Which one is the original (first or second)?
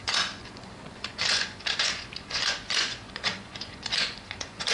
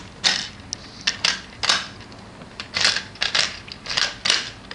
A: second